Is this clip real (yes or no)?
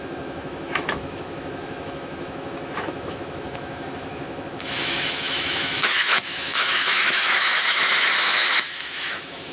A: no